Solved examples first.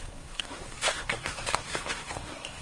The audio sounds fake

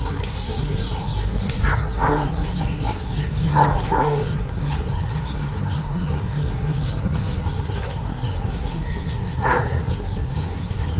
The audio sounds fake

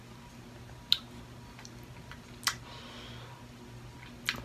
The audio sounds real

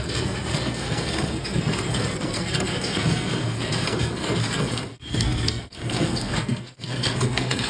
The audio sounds fake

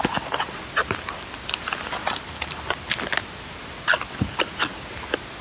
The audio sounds real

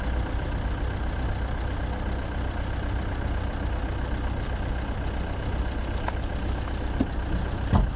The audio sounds real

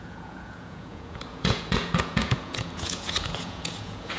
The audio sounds fake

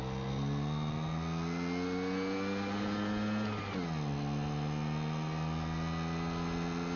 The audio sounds real